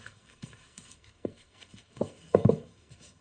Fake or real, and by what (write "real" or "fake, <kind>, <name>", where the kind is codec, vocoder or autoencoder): fake, codec, SNAC